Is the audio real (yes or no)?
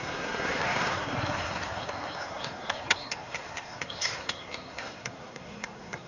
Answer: no